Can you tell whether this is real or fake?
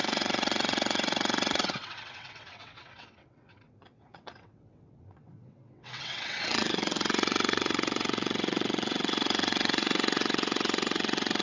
fake